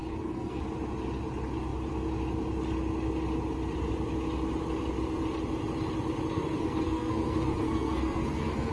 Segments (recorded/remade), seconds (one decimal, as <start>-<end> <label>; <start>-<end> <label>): 0.0-0.6 remade; 0.6-6.3 recorded; 6.3-8.7 remade